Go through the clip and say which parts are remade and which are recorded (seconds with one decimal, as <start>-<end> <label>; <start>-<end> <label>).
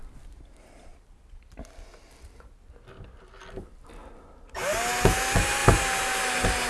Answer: 0.0-6.7 recorded